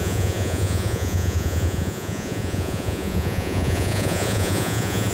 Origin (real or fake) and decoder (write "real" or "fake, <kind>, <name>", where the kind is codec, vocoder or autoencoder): fake, vocoder, Vocos